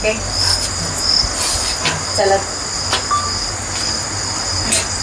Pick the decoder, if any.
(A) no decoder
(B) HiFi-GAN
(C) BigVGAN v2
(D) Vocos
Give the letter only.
A